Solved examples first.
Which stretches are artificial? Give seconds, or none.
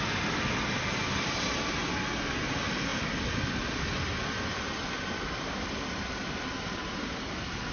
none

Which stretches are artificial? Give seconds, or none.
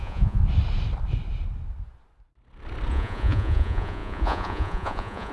0.0-0.4 (vocoder, Vocos); 2.9-5.3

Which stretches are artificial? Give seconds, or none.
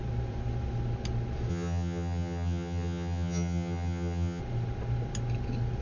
1.5-4.4 (vocoder, HiFi-GAN)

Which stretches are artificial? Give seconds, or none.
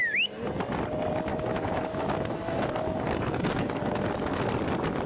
1.3-4.4 (autoencoder, DAC-VAE)